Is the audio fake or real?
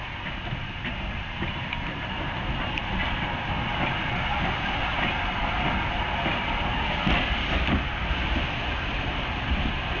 real